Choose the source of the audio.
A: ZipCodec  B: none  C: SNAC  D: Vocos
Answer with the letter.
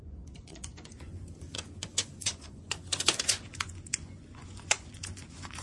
D